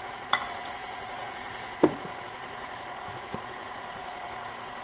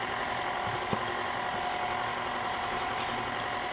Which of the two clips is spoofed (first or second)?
first